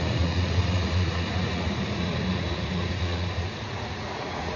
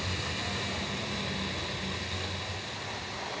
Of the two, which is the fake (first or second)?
first